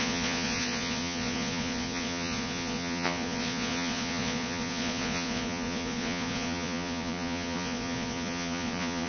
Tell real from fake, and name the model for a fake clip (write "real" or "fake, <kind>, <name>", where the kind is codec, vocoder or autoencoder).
fake, vocoder, Vocos